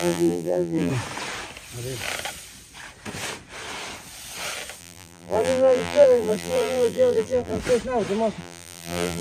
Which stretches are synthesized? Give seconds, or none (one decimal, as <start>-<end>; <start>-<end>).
0.0-0.9; 4.8-7.6; 8.4-9.2